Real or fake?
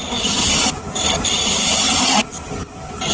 real